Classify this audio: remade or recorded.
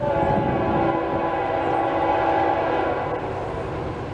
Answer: recorded